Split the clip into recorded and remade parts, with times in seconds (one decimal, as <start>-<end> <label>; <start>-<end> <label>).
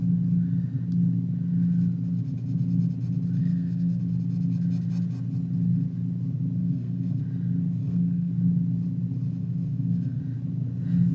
0.0-3.4 recorded; 3.4-4.0 remade; 4.0-6.6 recorded; 6.6-7.2 remade; 7.2-7.8 recorded; 7.8-8.3 remade; 8.3-9.4 recorded; 9.4-10.2 remade; 10.2-11.1 recorded